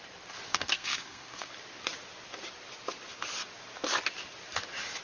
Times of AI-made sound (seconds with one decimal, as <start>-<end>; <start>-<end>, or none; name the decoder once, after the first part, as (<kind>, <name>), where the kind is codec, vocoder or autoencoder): 0.5-1.5 (codec, SNAC)